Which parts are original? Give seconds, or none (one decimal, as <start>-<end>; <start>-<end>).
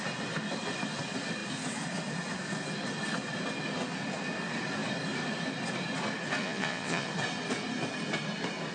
0.0-6.4; 7.1-8.7